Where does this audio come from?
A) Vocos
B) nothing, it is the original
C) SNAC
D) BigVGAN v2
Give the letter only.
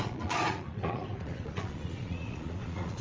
A